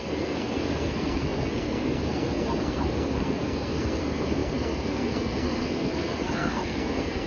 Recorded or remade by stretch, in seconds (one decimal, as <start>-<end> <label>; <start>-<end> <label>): 0.0-7.3 remade